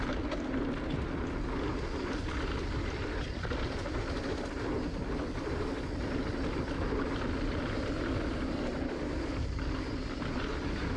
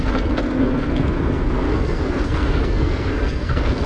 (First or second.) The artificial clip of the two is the second